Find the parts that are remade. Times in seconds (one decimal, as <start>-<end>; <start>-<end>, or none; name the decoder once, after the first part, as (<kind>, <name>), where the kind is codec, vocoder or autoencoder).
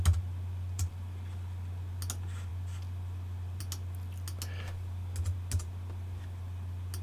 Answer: none